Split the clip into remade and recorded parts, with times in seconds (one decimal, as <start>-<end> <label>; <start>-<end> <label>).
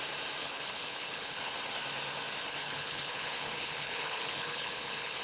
0.0-0.4 recorded; 0.4-1.5 remade; 1.5-2.6 recorded; 2.6-5.2 remade